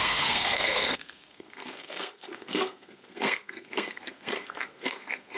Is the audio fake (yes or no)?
yes